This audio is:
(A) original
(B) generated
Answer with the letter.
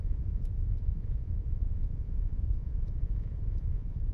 B